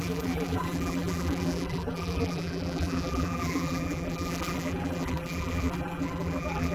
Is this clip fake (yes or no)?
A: yes